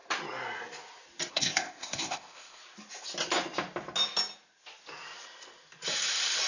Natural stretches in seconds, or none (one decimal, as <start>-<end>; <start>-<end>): 0.0-1.3; 2.6-6.5

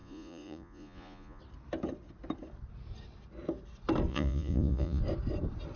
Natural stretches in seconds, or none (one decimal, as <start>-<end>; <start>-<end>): 1.4-4.1; 5.0-5.8